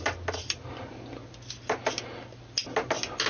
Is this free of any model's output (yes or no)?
yes